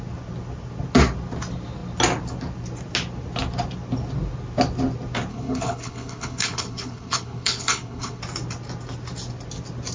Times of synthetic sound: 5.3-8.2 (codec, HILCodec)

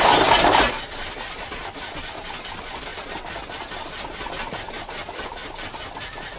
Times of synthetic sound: 0.0-2.9 (vocoder, BigVGAN v2); 4.3-6.4

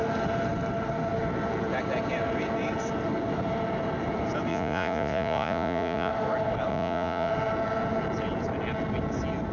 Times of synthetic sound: 4.5-6.1 (vocoder, Vocos); 6.7-7.3

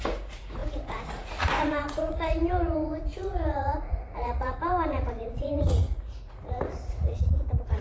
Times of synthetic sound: 0.0-7.8 (vocoder, Vocos)

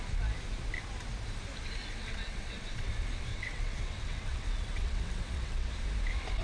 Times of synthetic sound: 2.0-2.9 (vocoder, WaveNeXt); 3.3-5.7

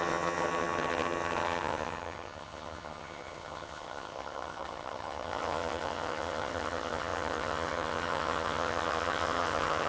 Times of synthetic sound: 0.0-9.9 (vocoder, HiFi-GAN)

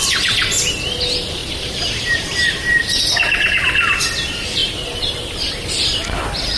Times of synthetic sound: 1.4-3.0 (vocoder, BigVGAN v2); 4.6-5.4